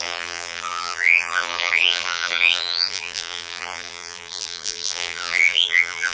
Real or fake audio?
fake